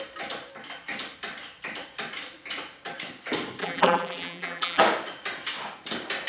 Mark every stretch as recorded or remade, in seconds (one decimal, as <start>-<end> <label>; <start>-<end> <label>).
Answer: 0.0-3.6 recorded; 3.6-4.8 remade; 4.8-6.3 recorded